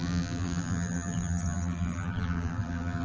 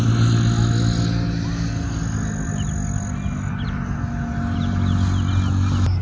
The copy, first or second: first